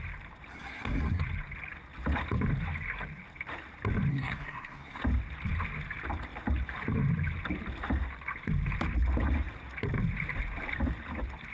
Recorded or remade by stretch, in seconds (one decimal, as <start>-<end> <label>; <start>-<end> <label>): 0.0-0.5 recorded; 0.5-1.2 remade; 1.2-4.1 recorded; 4.1-5.0 remade; 5.0-11.5 recorded